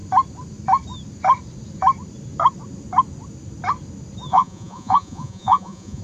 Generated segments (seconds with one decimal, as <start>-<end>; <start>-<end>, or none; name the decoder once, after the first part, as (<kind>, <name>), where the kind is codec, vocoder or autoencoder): 4.3-6.0 (vocoder, Vocos)